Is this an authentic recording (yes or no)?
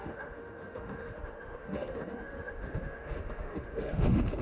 no